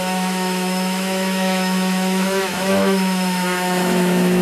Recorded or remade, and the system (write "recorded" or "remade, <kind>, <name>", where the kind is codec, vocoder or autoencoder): remade, autoencoder, DAC-VAE